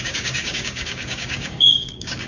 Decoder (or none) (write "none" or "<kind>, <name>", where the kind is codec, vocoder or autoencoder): codec, DAC